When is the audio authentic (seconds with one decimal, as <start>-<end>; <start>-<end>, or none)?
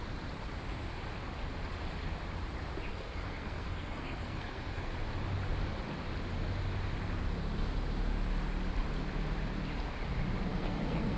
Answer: 0.0-2.9; 4.9-10.5